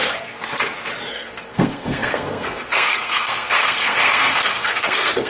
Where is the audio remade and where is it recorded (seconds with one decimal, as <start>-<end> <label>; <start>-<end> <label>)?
0.0-1.1 recorded; 1.1-5.3 remade